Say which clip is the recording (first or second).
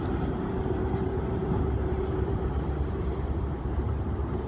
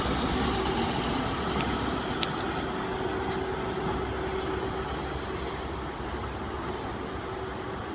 second